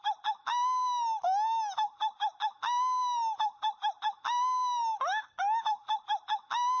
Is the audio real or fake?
real